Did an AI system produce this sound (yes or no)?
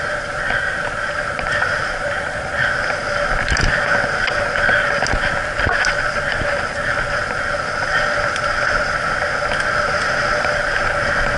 no